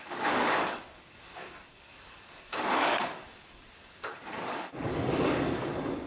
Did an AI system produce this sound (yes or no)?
yes